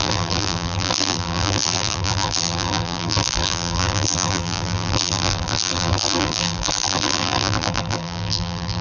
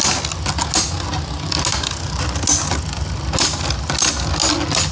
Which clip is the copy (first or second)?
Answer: first